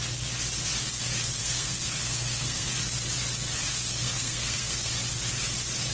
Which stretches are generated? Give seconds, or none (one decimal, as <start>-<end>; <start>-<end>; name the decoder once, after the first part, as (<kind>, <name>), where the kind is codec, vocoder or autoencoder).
1.4-2.7 (codec, SNAC); 3.7-4.9